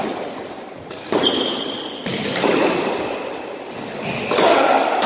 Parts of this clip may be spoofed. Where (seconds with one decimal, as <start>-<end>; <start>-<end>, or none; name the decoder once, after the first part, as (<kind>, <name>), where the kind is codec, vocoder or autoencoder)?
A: none